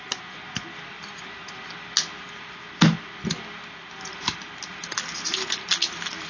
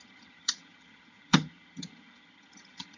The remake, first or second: second